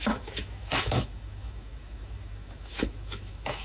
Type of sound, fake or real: fake